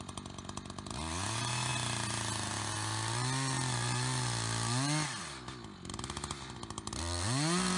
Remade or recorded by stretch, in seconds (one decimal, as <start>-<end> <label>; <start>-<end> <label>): 0.0-7.8 recorded